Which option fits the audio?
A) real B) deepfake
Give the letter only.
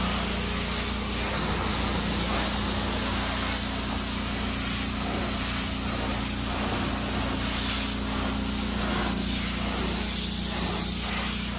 A